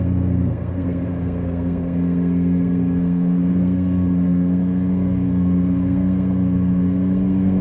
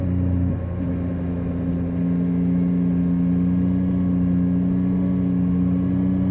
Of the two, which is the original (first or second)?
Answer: second